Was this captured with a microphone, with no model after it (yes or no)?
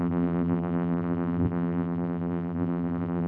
no